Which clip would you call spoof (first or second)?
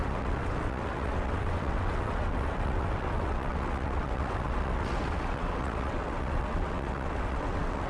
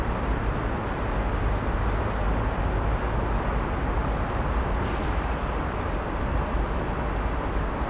first